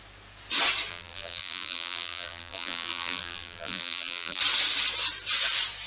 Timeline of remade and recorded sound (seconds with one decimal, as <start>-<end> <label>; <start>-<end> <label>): 0.0-0.9 recorded; 0.9-4.4 remade; 4.4-5.9 recorded

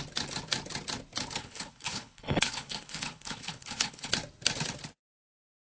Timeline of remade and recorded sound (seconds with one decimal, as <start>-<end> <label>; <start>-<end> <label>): 0.0-1.4 recorded; 1.4-4.1 remade; 4.1-5.6 recorded